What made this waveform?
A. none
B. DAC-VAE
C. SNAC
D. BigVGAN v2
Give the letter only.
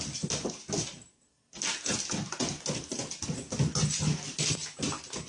A